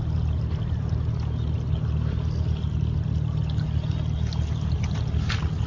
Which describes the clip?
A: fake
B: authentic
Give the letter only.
B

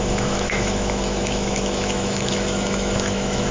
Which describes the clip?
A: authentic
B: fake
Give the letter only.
B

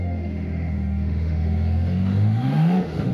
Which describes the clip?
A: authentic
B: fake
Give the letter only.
B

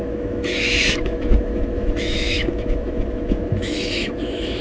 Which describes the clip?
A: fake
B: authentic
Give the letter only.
A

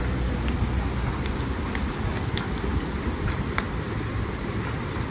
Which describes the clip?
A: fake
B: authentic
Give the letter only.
B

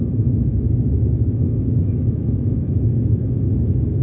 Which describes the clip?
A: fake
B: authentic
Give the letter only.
A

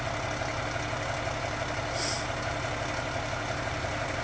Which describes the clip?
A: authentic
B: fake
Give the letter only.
A